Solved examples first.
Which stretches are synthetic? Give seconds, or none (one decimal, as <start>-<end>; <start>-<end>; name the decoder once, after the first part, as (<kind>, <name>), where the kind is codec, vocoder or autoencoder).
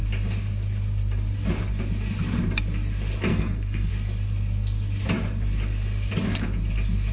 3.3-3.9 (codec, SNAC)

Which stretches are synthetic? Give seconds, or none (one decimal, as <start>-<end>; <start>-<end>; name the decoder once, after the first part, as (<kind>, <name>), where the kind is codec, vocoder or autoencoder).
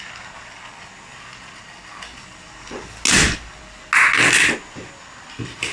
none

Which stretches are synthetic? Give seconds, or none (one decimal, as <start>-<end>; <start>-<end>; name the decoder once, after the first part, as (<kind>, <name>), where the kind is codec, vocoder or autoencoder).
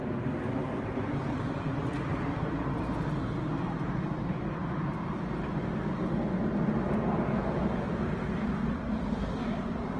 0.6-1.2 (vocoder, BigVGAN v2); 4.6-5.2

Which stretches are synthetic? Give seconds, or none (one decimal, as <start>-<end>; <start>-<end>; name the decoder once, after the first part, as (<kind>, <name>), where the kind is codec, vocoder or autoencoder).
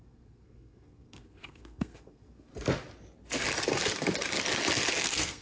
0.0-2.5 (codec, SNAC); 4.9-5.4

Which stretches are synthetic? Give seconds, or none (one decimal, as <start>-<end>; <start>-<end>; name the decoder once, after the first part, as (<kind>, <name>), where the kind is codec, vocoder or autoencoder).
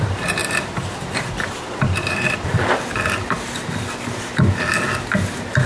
none